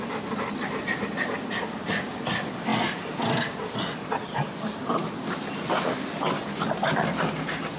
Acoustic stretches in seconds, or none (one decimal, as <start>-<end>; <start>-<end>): 0.0-7.8